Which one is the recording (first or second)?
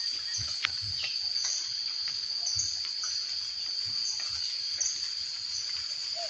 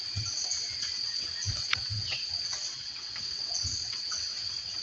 first